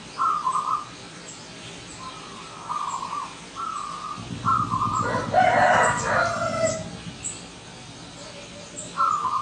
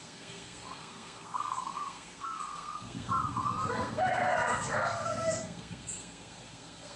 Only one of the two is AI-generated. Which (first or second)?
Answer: second